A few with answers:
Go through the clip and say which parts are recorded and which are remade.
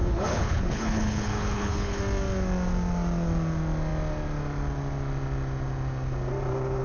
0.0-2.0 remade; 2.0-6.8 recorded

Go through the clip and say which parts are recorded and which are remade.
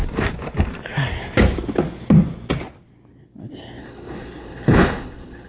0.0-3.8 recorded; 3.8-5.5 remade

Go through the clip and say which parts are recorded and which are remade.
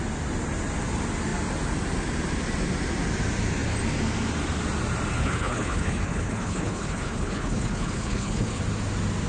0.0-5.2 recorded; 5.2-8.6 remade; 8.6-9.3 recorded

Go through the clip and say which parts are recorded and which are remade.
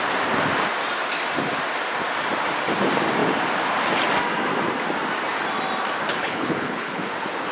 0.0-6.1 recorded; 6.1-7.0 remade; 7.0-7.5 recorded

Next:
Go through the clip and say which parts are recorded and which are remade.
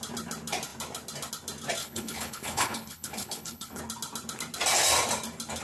0.0-1.8 recorded; 1.8-3.8 remade; 3.8-5.6 recorded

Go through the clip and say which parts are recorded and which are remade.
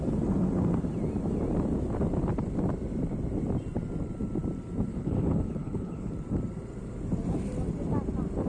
0.0-4.9 recorded; 4.9-6.1 remade; 6.1-8.5 recorded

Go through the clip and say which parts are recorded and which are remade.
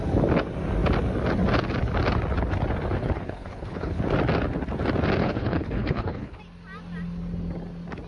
0.0-3.0 recorded; 3.0-4.0 remade; 4.0-5.2 recorded; 5.2-6.4 remade; 6.4-8.1 recorded